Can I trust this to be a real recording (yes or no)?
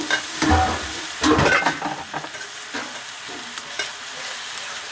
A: yes